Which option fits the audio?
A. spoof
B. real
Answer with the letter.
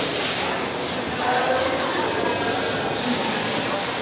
B